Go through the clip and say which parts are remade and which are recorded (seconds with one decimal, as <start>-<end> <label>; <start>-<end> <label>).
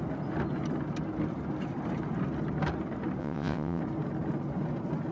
0.0-3.2 recorded; 3.2-3.8 remade; 3.8-5.1 recorded